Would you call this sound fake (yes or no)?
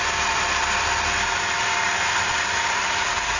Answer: no